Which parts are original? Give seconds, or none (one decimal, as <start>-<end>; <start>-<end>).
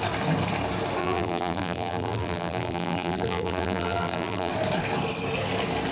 0.0-1.0; 4.5-5.9